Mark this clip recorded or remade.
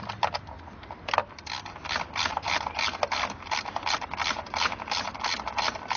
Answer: recorded